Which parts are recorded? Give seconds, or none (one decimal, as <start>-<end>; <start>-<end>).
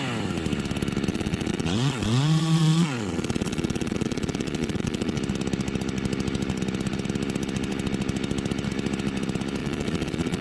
0.0-1.1; 5.2-9.6